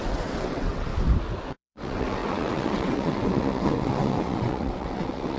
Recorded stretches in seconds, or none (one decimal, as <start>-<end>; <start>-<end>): 0.9-1.5